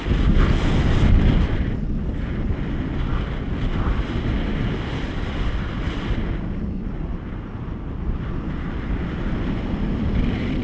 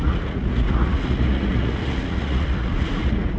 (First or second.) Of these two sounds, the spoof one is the second